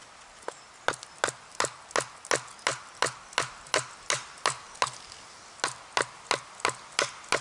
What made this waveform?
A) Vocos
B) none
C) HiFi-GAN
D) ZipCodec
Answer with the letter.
B